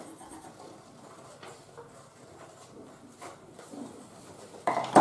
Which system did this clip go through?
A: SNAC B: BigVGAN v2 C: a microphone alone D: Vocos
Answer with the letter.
C